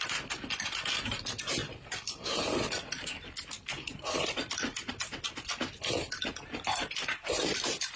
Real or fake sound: real